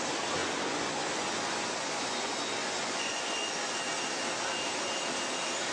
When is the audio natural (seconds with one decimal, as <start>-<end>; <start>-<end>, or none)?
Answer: 0.0-0.4; 3.8-5.7